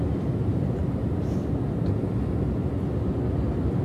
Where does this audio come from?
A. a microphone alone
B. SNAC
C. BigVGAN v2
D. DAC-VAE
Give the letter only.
A